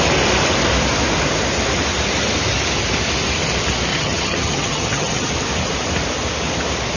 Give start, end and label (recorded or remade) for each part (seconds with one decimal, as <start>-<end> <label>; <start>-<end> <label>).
0.0-3.9 recorded; 3.9-5.3 remade; 5.3-7.0 recorded